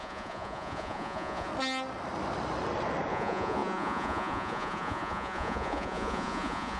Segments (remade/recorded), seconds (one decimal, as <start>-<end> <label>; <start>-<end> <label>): 0.0-1.5 remade; 1.5-3.1 recorded; 3.1-6.8 remade